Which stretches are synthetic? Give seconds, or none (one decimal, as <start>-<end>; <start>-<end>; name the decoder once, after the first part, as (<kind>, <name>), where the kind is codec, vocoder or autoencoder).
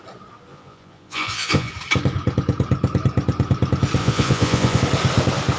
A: 0.5-1.7 (vocoder, Vocos); 4.0-4.8